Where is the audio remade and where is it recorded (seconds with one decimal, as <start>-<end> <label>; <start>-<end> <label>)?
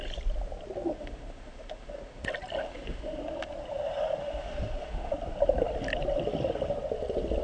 0.0-0.9 recorded; 0.9-2.2 remade; 2.2-2.6 recorded; 2.6-3.2 remade; 3.2-4.2 recorded; 4.2-5.1 remade; 5.1-7.4 recorded